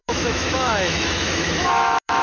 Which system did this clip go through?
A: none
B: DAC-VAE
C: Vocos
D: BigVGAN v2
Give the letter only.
B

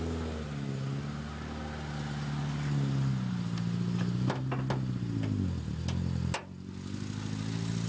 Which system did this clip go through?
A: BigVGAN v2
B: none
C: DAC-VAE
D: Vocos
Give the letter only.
B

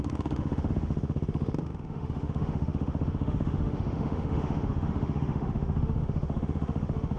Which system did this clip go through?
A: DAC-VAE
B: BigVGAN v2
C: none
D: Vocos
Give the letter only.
A